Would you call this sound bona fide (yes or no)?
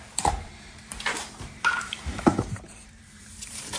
no